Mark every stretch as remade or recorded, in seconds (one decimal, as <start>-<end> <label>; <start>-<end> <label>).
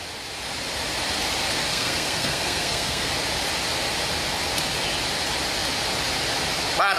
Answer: 0.0-1.7 recorded; 1.7-3.1 remade; 3.1-7.0 recorded